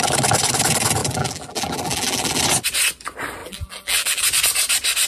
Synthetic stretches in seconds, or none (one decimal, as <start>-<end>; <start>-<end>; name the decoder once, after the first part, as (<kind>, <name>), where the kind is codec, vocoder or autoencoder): 1.0-2.4 (vocoder, BigVGAN v2); 3.4-4.2